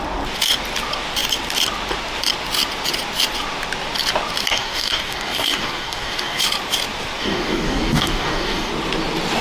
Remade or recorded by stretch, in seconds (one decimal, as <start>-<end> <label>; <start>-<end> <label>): 0.0-4.5 recorded; 4.5-6.4 remade; 6.4-7.2 recorded; 7.2-8.7 remade; 8.7-9.4 recorded